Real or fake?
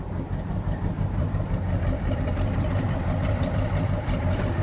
fake